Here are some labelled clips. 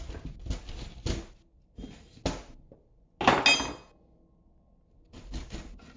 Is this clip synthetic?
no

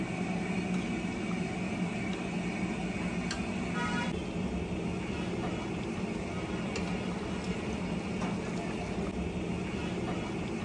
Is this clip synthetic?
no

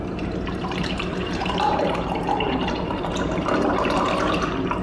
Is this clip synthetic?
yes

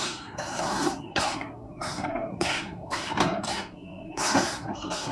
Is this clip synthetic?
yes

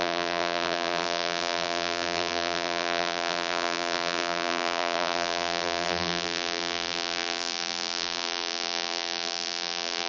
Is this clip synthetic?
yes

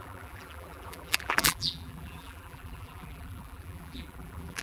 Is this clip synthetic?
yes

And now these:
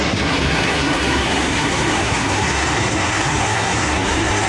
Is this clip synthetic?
yes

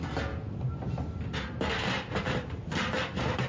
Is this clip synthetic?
no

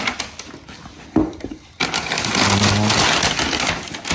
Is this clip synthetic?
no